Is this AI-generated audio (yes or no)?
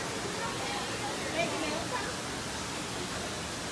no